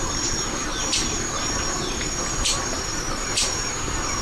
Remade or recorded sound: recorded